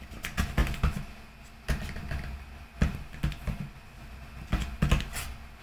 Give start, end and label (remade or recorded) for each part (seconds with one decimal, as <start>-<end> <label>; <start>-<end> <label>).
0.0-5.6 recorded